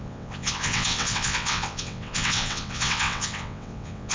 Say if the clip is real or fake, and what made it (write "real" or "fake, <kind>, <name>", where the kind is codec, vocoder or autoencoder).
fake, vocoder, WaveNeXt